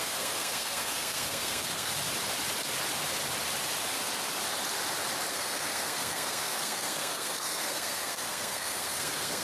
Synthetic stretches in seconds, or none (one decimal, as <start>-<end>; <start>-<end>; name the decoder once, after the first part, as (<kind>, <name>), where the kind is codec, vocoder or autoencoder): 0.0-1.9 (codec, SNAC); 5.3-9.4